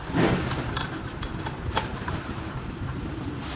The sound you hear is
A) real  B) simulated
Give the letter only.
A